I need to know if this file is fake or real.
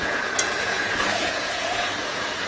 fake